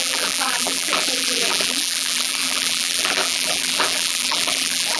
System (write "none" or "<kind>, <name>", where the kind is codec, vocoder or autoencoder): vocoder, BigVGAN v2